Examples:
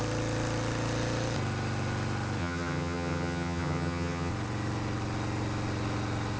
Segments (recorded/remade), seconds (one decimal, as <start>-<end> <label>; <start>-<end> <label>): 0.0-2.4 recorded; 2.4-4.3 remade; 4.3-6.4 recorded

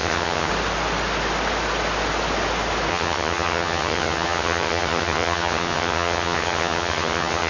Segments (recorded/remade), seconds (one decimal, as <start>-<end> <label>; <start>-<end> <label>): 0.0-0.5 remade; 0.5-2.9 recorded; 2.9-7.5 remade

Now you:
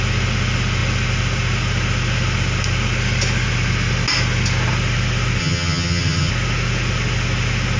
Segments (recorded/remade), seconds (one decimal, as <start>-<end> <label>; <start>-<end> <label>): 0.0-5.4 recorded; 5.4-6.3 remade; 6.3-7.8 recorded

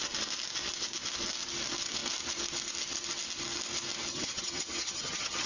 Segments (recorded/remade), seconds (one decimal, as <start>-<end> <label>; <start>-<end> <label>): 0.0-4.1 recorded; 4.1-5.5 remade